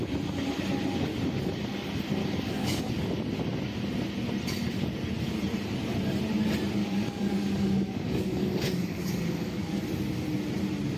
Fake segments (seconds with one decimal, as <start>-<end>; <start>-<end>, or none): 2.2-2.8; 6.8-9.8